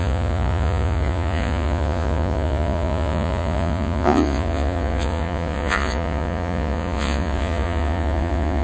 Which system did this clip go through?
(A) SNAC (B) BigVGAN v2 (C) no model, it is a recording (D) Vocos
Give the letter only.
D